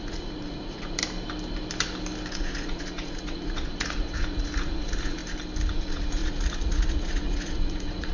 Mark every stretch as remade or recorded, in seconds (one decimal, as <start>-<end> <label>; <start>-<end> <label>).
0.0-1.0 remade; 1.0-2.3 recorded; 2.3-5.2 remade; 5.2-5.7 recorded; 5.7-8.1 remade